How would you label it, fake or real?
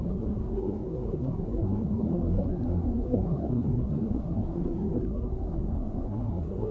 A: fake